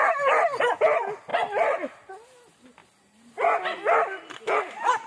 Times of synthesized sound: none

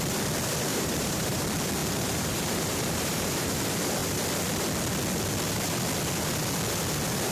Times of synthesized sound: 0.7-1.4 (vocoder, BigVGAN v2); 1.8-3.5

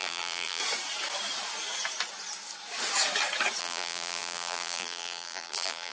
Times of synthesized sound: 0.0-0.6 (vocoder, BigVGAN v2); 3.6-5.9

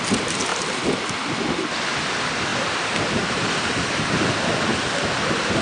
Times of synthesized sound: 0.5-1.1 (vocoder, BigVGAN v2); 2.5-4.0

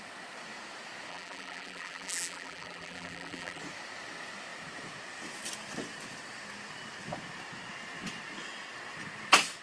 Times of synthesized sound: 1.1-3.6 (vocoder, BigVGAN v2)

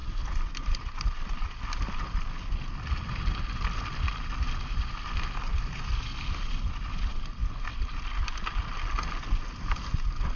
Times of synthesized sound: 0.0-2.0 (vocoder, BigVGAN v2); 5.9-6.6

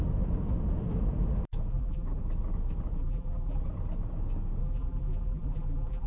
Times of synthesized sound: 1.7-2.2 (vocoder, BigVGAN v2); 3.0-3.6; 4.6-6.1

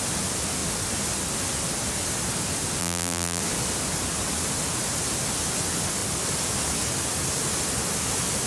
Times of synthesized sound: 2.8-3.4 (vocoder, BigVGAN v2)